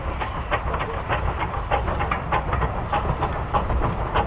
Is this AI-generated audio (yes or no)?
no